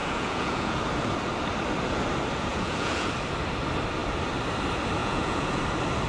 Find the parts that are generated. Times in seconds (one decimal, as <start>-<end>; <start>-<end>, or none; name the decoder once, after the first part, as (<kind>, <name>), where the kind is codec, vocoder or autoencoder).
0.0-0.8 (vocoder, Vocos); 2.5-3.1; 5.0-5.6